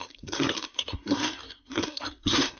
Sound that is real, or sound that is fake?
fake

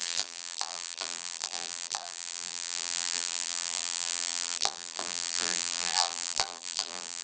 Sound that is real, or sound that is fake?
fake